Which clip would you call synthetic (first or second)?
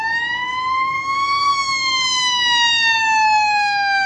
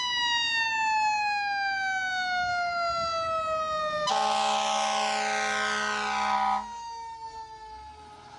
first